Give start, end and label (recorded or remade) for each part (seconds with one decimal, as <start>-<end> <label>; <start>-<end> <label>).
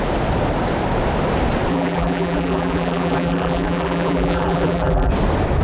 0.0-1.7 recorded; 1.7-5.1 remade; 5.1-5.6 recorded